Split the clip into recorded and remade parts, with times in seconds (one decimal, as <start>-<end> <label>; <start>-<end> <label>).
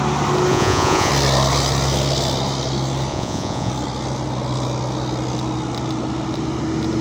0.0-0.5 recorded; 0.5-1.1 remade; 1.1-3.1 recorded; 3.1-3.7 remade; 3.7-7.0 recorded